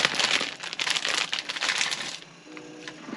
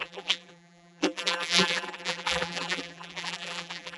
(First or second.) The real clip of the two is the first